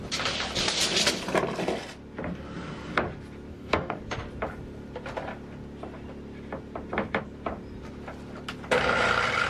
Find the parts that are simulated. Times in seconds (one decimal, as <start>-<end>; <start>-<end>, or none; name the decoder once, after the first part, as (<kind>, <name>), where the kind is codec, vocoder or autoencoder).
3.5-4.0 (codec, DAC)